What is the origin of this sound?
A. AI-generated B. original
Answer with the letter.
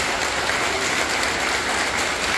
B